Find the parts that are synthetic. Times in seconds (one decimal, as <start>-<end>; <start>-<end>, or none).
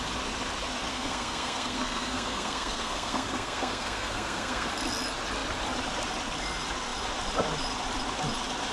0.9-4.7